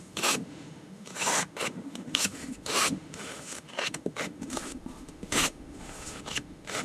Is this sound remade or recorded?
remade